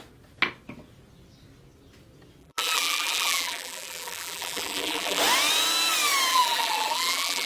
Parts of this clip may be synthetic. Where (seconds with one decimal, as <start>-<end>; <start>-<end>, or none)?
2.4-5.2; 6.3-7.5